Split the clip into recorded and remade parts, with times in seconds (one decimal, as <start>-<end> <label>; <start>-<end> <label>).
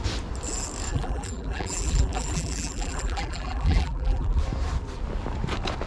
0.0-0.9 recorded; 0.9-4.4 remade; 4.4-5.9 recorded